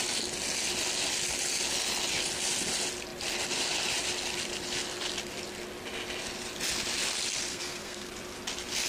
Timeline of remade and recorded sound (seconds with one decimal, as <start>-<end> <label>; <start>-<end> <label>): 0.0-7.5 recorded; 7.5-8.1 remade; 8.1-8.9 recorded